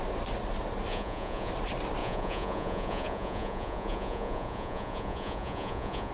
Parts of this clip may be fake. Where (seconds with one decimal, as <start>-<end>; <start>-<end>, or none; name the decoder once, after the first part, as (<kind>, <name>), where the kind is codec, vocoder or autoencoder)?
0.9-1.5 (vocoder, Vocos); 2.0-6.1